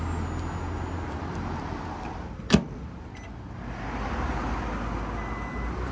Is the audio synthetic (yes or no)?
no